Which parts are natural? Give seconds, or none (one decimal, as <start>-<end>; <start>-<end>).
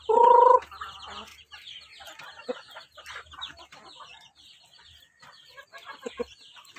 0.0-6.8